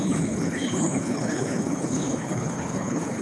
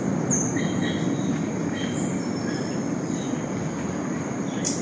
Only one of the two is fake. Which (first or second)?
first